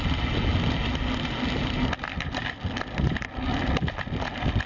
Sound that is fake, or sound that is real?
real